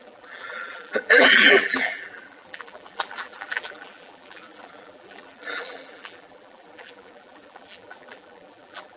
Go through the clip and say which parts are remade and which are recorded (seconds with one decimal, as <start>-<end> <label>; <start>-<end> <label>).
0.0-9.0 remade